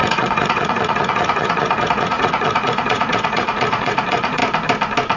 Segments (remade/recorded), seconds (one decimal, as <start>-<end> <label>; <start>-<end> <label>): 0.0-4.4 remade; 4.4-5.2 recorded